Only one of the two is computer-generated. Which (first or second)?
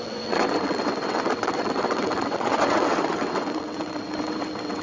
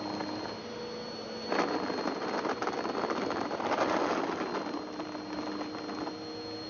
first